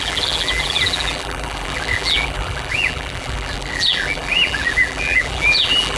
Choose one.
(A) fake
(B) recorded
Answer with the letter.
A